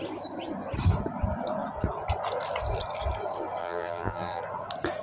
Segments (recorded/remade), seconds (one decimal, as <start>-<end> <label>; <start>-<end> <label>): 0.0-3.6 recorded; 3.6-4.4 remade; 4.4-5.0 recorded